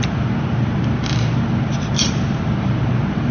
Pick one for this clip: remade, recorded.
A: remade